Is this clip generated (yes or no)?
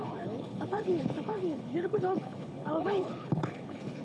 yes